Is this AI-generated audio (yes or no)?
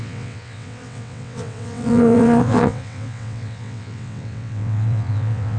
yes